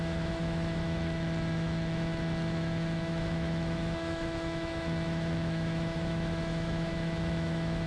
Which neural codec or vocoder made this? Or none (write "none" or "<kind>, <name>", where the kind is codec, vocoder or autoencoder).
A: autoencoder, DAC-VAE